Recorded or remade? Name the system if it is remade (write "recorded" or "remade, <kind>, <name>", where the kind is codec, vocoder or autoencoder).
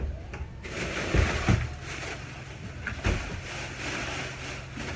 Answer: recorded